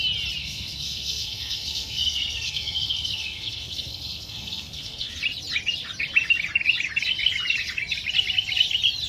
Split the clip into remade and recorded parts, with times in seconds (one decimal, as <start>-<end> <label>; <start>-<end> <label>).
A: 0.0-0.4 recorded; 0.4-5.1 remade; 5.1-9.1 recorded